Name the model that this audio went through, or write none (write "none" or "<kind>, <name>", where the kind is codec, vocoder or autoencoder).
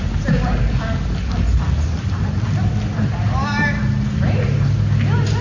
none